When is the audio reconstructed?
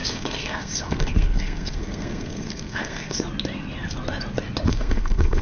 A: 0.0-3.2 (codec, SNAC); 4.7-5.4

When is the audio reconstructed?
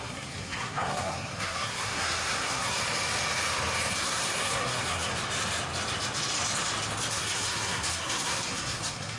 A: 0.0-2.8 (codec, SNAC); 3.9-5.1; 7.1-9.2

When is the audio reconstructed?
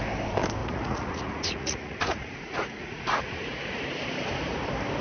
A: 0.6-3.6 (vocoder, Vocos)